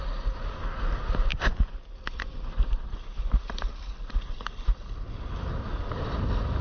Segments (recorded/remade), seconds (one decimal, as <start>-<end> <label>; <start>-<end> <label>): 0.0-6.6 recorded